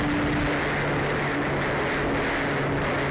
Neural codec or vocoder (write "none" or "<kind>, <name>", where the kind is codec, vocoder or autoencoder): none